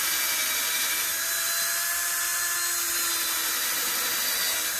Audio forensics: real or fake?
real